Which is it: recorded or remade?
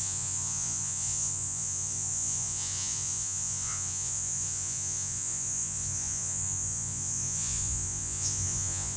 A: remade